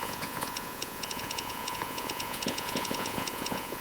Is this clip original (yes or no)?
no